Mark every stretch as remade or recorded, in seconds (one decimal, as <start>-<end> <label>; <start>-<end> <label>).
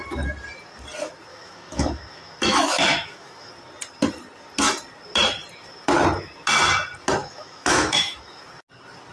0.0-1.3 recorded; 1.3-3.5 remade; 3.5-7.2 recorded; 7.2-8.4 remade; 8.4-9.1 recorded